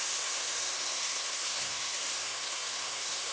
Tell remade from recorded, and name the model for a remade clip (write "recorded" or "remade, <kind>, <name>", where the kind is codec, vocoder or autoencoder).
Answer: remade, codec, SNAC